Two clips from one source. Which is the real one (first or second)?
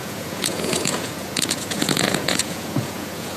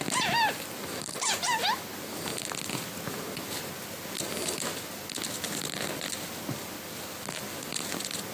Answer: second